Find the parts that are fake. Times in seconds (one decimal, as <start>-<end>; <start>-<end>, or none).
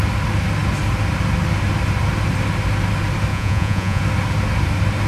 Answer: 3.3-4.0